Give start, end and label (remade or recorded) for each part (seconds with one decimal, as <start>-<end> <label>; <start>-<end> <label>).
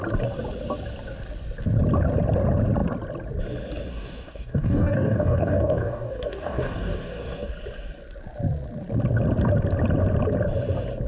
0.0-3.9 recorded; 3.9-7.5 remade; 7.5-11.1 recorded